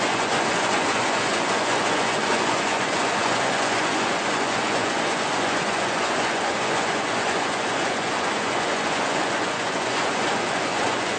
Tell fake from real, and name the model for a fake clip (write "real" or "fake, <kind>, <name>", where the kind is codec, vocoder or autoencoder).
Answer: fake, vocoder, Vocos